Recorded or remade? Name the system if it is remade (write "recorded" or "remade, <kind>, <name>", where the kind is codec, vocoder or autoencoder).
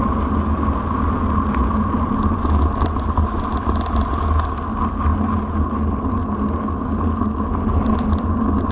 recorded